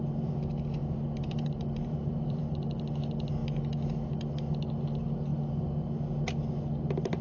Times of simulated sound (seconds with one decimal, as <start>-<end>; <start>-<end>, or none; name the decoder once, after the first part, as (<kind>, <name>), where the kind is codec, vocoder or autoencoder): 0.8-2.8 (vocoder, BigVGAN v2)